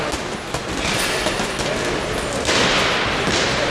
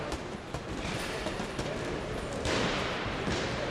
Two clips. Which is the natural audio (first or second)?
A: first